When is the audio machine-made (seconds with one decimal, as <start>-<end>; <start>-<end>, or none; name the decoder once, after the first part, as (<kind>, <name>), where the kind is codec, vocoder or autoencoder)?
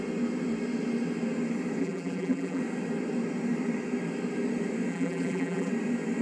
1.8-2.6 (vocoder, BigVGAN v2); 4.9-5.7